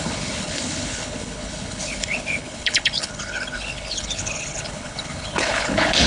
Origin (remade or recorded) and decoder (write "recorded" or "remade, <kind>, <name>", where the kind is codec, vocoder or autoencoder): remade, codec, HILCodec